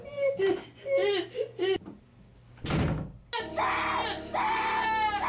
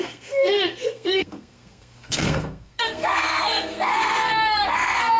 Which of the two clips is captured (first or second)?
first